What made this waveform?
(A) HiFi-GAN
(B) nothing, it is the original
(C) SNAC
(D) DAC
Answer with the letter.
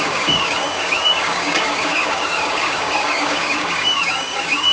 D